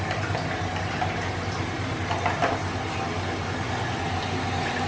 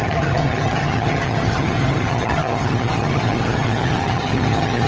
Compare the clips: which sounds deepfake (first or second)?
second